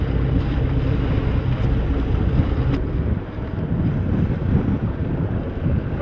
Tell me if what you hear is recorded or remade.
recorded